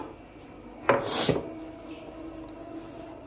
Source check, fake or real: real